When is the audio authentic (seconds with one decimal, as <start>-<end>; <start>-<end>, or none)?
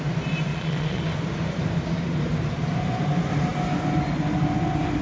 0.0-0.5; 1.0-5.0